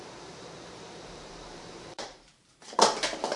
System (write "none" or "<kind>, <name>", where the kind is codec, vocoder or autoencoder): vocoder, BigVGAN v2